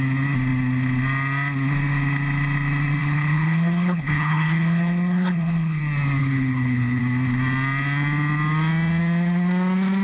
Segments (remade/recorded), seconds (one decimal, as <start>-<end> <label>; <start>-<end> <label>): 0.0-3.0 recorded; 3.0-5.8 remade; 5.8-6.2 recorded; 6.2-7.0 remade; 7.0-10.0 recorded